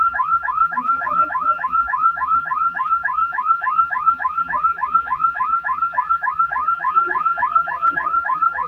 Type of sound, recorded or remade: remade